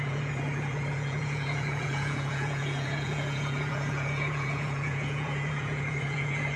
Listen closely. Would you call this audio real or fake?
fake